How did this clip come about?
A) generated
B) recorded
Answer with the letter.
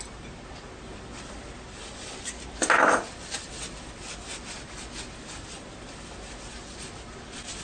B